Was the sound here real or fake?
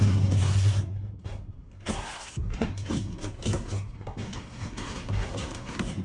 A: fake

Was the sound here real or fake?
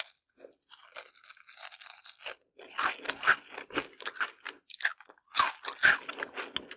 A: real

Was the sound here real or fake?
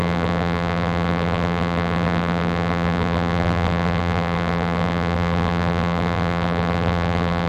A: fake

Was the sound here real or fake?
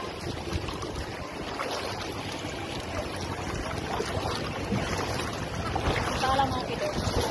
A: real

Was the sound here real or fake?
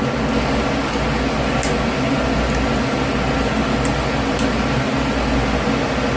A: real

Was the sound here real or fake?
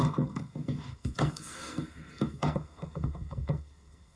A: fake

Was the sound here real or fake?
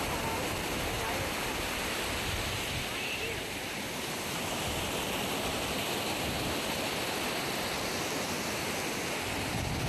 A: real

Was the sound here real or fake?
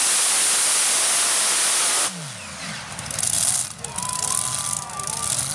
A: real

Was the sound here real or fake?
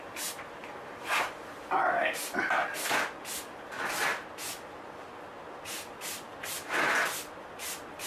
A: real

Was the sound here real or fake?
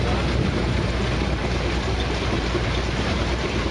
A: fake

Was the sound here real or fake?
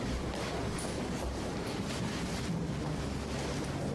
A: real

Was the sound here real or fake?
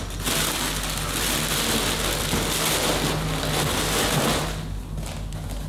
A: real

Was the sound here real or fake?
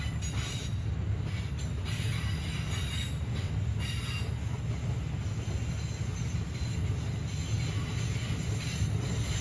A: real